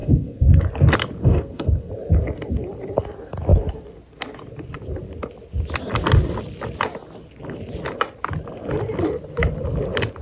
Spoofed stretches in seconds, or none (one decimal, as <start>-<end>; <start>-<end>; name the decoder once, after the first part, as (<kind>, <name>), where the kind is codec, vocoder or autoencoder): 0.0-0.6 (codec, SNAC); 1.2-1.9